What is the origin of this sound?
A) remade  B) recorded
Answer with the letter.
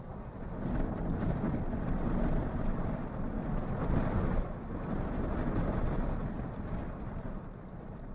A